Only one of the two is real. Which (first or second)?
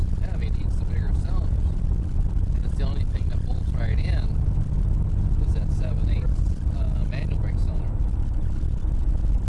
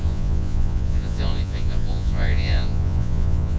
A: first